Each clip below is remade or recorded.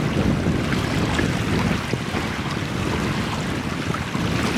recorded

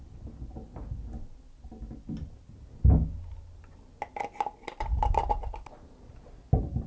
recorded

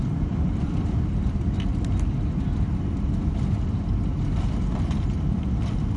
remade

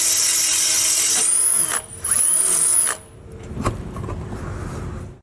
remade